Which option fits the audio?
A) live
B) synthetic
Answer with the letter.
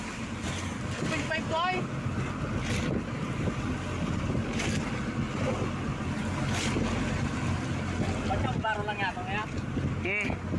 A